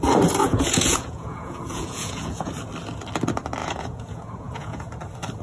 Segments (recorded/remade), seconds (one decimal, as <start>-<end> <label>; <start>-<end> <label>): 0.0-0.4 recorded; 0.4-2.5 remade; 2.5-3.6 recorded; 3.6-4.9 remade; 4.9-5.4 recorded